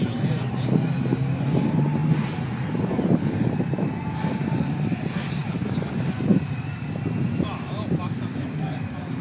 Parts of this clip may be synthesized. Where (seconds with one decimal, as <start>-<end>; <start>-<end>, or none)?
0.0-2.0; 2.7-9.2

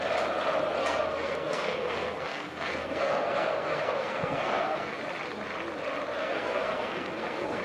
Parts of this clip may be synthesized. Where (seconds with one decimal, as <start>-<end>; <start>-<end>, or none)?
0.8-5.0; 6.2-7.6

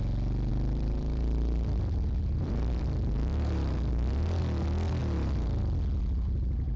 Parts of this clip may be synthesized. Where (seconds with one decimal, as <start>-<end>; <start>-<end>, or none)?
0.5-4.4; 5.0-5.6

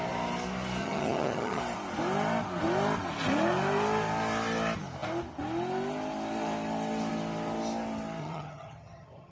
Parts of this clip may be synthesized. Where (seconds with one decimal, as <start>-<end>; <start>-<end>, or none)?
0.8-1.6; 8.2-9.3